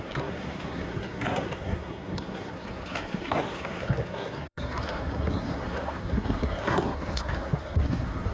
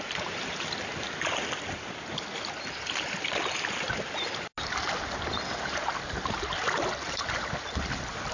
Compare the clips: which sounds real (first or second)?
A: second